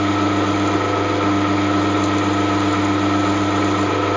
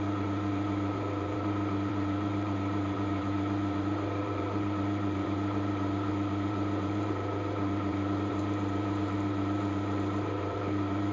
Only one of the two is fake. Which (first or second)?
second